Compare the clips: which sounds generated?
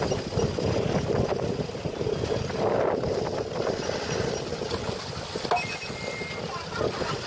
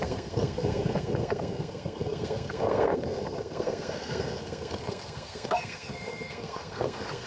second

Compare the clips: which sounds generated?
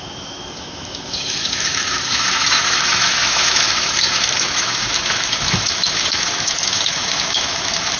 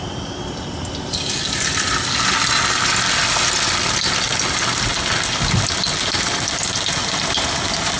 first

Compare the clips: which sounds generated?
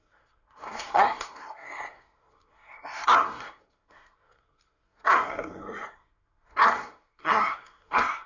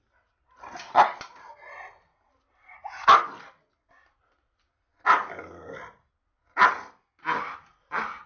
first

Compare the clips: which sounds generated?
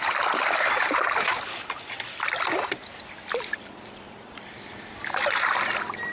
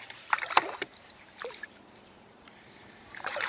second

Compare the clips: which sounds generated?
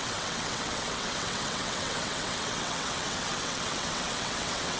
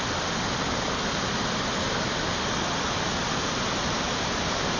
first